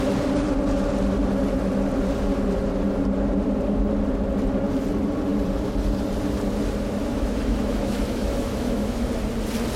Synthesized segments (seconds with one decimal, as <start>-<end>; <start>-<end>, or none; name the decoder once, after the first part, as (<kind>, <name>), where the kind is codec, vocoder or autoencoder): 7.0-9.1 (autoencoder, DAC-VAE)